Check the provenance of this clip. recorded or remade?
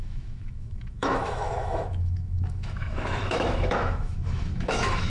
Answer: remade